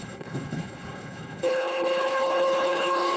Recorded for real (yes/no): no